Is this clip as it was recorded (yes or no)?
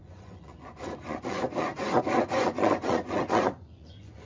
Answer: no